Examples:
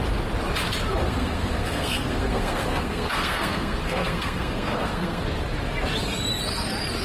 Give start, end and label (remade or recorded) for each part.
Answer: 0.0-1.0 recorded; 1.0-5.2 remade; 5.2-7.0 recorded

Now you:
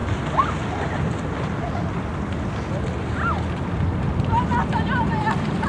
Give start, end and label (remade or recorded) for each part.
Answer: 0.0-3.4 recorded; 3.4-5.7 remade

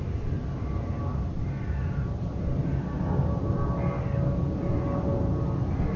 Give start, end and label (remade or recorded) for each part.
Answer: 0.0-6.0 recorded